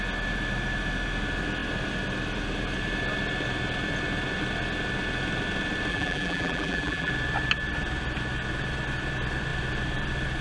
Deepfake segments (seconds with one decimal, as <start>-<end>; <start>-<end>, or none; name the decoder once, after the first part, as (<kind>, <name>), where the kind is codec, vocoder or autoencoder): 5.9-7.1 (vocoder, BigVGAN v2)